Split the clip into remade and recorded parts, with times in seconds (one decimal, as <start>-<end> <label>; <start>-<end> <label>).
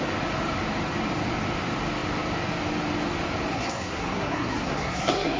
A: 0.0-3.5 recorded; 3.5-5.4 remade